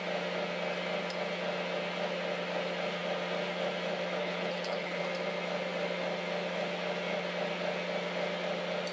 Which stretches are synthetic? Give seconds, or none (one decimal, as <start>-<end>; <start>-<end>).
4.2-5.0

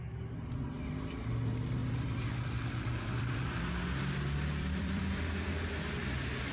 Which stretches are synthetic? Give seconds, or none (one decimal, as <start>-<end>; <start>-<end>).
1.8-5.0

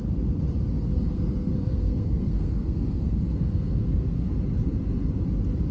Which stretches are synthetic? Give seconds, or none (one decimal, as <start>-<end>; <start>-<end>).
0.9-4.3

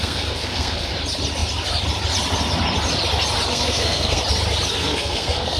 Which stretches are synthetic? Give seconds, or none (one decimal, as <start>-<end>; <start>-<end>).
0.0-0.9; 3.5-4.2; 4.8-5.6